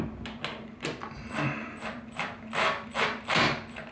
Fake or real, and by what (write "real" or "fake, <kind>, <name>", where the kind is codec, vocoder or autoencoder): real